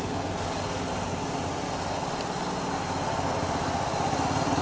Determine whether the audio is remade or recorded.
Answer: recorded